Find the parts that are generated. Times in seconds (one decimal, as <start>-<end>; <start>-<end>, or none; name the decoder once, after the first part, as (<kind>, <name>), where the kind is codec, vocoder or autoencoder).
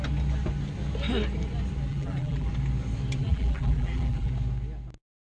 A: 1.9-2.5 (vocoder, BigVGAN v2); 3.2-4.3